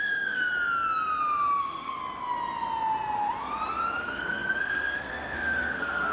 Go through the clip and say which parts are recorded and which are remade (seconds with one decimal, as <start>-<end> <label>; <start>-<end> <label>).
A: 0.0-0.5 remade; 0.5-1.6 recorded; 1.6-2.0 remade; 2.0-4.0 recorded; 4.0-6.1 remade

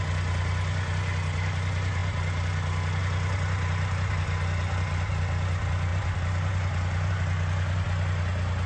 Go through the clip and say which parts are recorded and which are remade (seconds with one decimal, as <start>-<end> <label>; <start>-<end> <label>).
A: 0.0-8.7 recorded

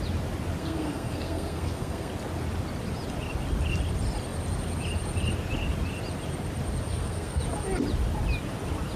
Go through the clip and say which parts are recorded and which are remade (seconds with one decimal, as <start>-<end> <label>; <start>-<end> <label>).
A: 0.0-0.6 recorded; 0.6-2.1 remade; 2.1-6.9 recorded; 6.9-7.4 remade; 7.4-9.0 recorded